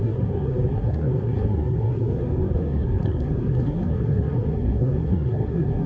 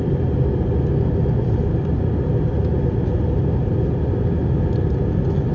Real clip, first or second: second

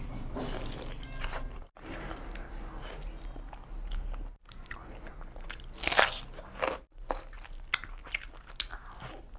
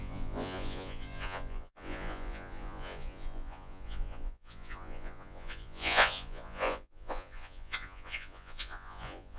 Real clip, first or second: first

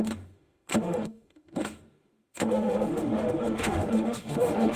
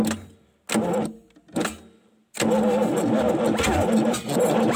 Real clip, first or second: second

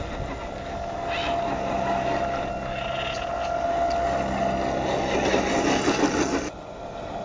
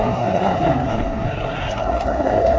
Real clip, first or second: first